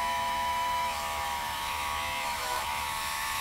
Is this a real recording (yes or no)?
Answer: no